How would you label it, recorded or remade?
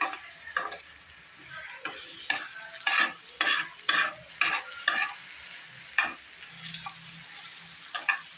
recorded